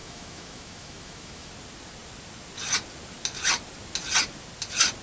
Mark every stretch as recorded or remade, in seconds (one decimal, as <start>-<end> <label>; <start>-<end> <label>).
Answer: 0.0-1.5 remade; 1.5-5.0 recorded